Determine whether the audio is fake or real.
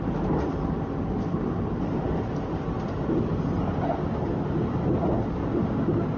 real